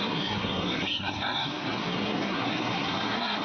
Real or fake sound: fake